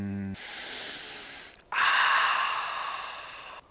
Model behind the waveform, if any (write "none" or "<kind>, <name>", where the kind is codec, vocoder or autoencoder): none